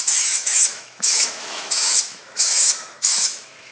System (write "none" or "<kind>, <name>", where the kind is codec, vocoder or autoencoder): autoencoder, DAC-VAE